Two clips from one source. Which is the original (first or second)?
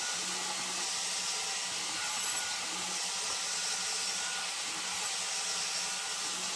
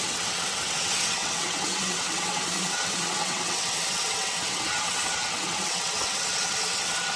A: first